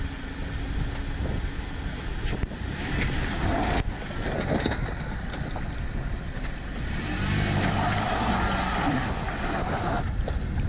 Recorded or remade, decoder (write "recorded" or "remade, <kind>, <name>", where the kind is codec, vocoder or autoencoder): recorded